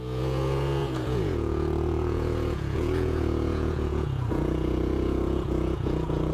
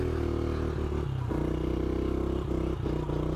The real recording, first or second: second